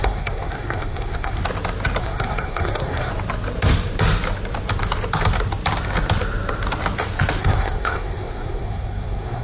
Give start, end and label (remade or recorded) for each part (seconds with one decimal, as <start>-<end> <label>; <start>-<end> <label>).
0.0-1.4 remade; 1.4-2.0 recorded; 2.0-3.1 remade; 3.1-7.4 recorded; 7.4-9.4 remade